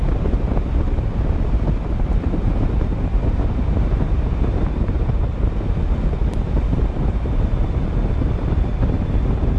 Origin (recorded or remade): remade